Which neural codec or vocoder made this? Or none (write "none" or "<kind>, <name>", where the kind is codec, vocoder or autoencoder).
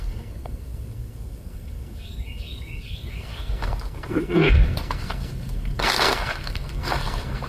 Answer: codec, SNAC